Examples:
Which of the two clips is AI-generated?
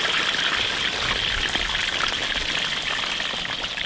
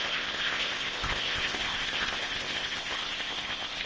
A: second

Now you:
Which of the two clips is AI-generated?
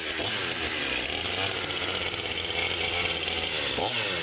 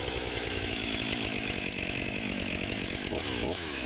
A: second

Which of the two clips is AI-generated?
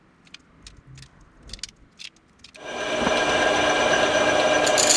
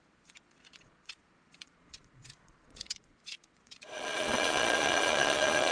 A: second